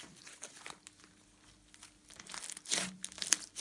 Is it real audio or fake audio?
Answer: real